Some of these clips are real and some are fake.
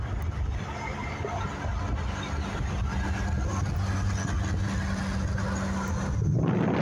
real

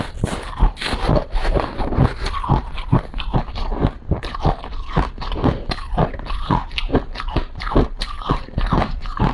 real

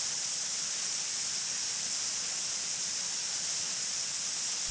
real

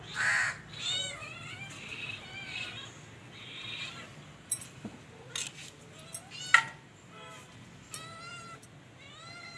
real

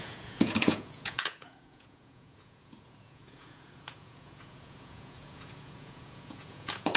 fake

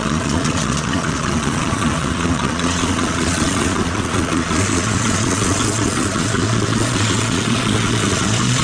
fake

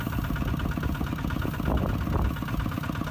real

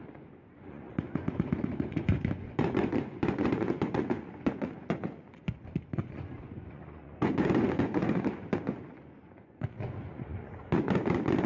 fake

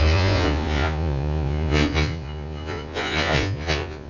fake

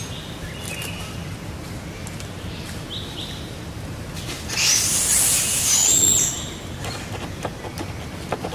real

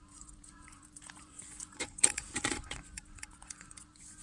fake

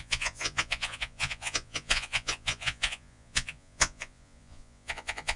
fake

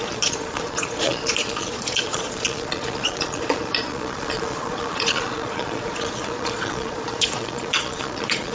fake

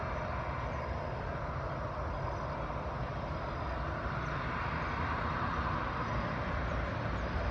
real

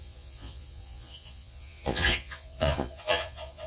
fake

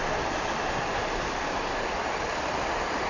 real